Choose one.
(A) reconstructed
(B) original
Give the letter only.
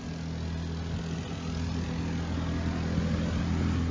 B